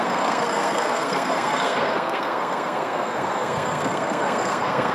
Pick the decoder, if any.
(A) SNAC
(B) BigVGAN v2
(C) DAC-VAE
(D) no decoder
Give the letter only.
A